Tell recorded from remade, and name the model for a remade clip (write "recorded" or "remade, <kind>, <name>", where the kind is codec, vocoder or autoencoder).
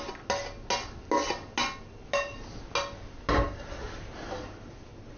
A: recorded